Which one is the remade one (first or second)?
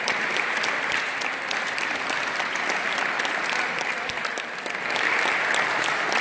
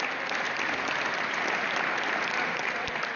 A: first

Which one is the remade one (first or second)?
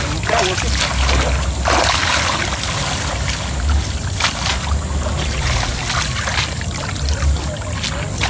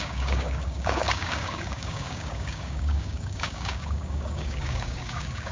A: second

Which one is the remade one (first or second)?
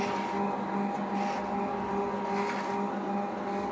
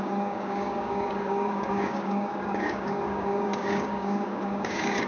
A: second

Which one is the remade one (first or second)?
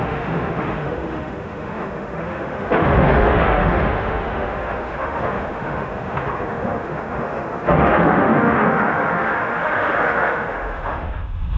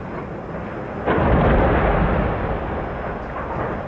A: first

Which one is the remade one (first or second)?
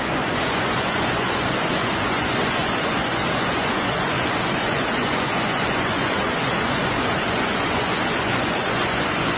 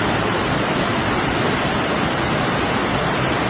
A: first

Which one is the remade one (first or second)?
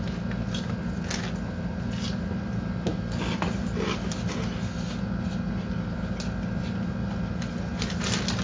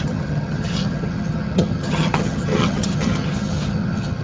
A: second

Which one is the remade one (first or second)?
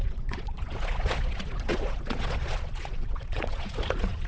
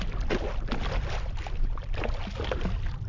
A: first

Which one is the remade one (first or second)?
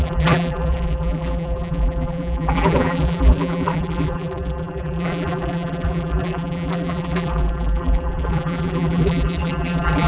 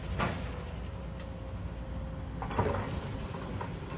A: first